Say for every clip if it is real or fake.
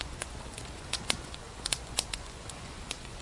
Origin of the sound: fake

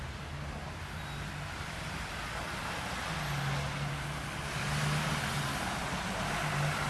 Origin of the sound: real